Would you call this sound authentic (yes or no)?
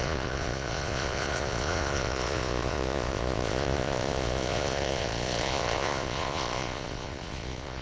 no